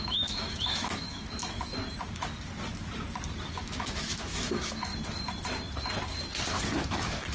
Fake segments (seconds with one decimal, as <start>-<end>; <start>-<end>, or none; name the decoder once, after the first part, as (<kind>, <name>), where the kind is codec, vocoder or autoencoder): 0.0-1.7 (autoencoder, DAC-VAE); 3.5-4.9; 6.5-7.3